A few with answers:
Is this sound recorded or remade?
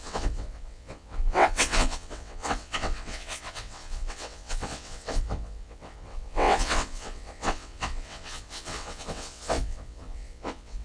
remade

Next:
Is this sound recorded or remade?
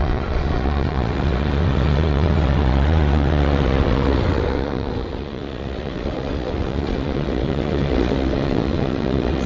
remade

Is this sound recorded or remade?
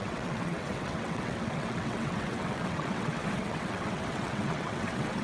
remade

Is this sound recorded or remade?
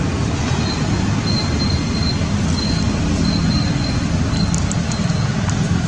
recorded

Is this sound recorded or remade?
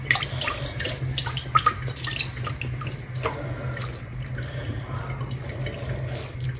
recorded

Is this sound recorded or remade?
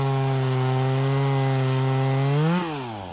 recorded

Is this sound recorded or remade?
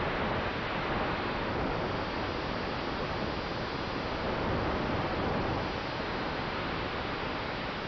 recorded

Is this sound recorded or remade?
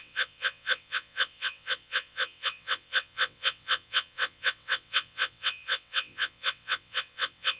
remade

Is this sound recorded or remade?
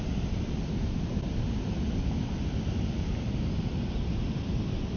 recorded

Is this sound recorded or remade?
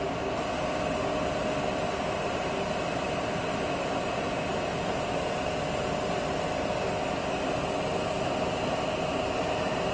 recorded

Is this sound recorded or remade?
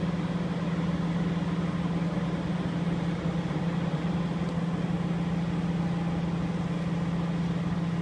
recorded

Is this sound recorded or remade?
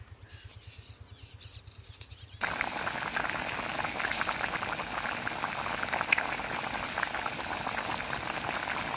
recorded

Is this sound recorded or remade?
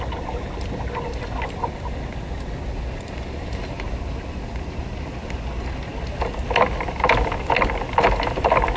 recorded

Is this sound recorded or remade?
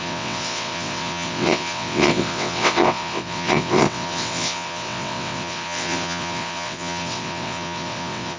remade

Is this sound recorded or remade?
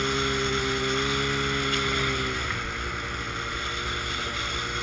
recorded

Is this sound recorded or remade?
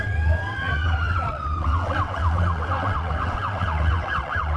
remade